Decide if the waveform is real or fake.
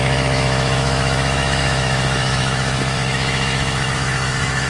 fake